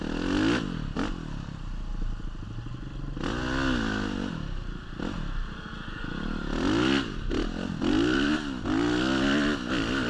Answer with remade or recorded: recorded